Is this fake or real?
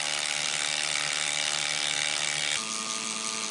real